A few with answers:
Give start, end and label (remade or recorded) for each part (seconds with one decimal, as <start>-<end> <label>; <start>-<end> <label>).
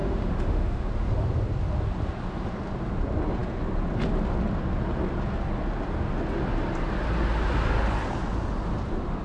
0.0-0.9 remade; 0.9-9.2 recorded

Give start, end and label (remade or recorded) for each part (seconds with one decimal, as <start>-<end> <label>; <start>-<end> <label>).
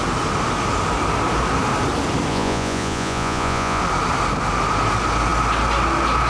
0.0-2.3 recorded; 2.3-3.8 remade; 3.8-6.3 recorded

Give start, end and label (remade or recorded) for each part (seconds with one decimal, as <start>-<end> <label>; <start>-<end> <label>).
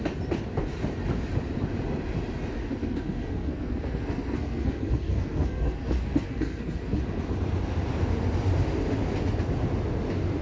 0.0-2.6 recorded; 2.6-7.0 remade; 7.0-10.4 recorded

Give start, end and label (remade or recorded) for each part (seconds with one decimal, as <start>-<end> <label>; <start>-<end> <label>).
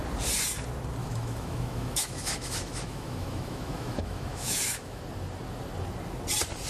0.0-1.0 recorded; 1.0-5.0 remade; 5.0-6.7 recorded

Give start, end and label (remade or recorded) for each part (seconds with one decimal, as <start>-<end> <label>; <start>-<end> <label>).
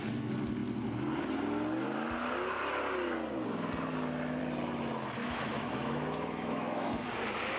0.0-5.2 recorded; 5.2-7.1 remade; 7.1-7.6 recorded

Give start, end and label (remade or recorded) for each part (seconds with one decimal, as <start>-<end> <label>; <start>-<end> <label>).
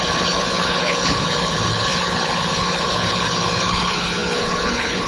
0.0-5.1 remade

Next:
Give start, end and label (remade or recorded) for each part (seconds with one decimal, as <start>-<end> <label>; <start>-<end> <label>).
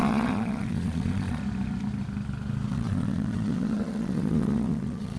0.0-1.4 remade; 1.4-2.7 recorded; 2.7-5.2 remade